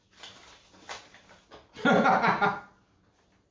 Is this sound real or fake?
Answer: real